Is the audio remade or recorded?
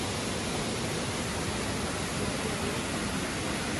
recorded